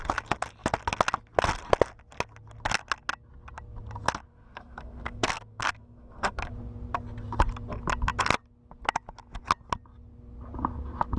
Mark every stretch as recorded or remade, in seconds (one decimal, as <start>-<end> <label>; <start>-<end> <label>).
0.0-4.3 recorded; 4.3-6.5 remade; 6.5-11.2 recorded